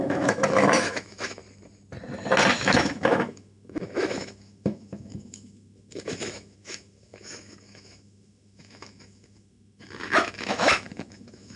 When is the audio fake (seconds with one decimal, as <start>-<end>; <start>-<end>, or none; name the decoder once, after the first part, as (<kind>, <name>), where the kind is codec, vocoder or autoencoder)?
0.0-1.4 (autoencoder, DAC-VAE); 2.5-11.6